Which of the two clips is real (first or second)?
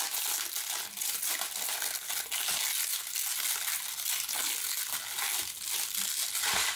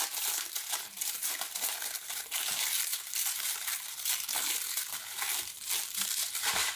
first